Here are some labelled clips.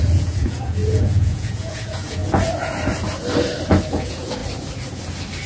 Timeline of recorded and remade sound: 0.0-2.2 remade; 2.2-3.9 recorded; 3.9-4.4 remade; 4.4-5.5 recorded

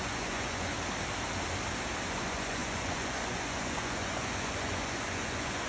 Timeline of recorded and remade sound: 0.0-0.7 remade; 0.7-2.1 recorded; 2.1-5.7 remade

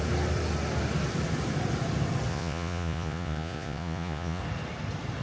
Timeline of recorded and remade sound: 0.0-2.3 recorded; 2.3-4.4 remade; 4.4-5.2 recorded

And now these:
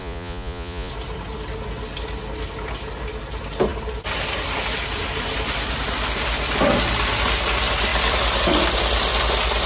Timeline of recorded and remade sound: 0.0-0.9 remade; 0.9-9.7 recorded